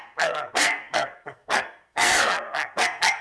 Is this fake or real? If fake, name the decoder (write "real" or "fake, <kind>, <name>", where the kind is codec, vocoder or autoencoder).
fake, codec, SNAC